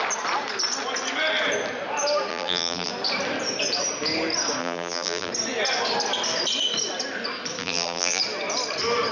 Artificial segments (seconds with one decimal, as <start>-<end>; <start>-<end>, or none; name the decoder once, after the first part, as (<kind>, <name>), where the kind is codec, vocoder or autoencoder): 2.3-2.9 (vocoder, BigVGAN v2); 4.6-5.3; 7.6-8.2